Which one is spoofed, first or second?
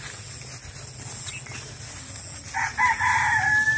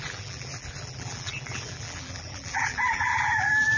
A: second